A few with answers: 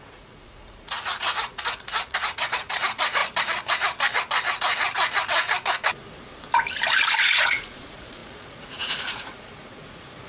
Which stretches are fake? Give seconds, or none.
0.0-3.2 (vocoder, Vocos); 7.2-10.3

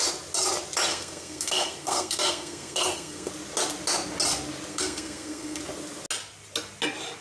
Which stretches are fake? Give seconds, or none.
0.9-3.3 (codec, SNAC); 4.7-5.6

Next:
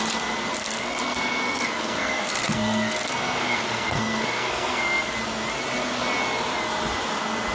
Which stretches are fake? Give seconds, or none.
0.6-5.1 (codec, SNAC)

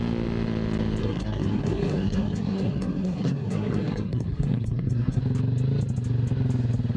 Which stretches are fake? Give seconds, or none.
1.0-5.2 (codec, SNAC)

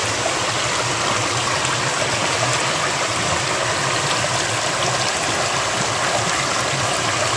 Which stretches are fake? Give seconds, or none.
none